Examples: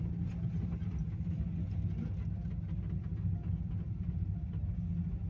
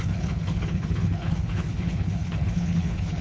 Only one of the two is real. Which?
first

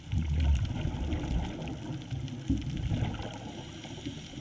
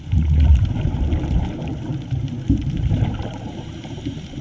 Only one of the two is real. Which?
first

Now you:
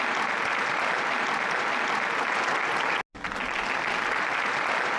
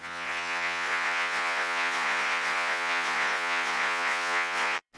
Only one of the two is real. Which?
first